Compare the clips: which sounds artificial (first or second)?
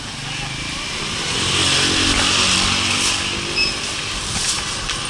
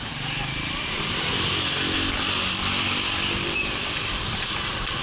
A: second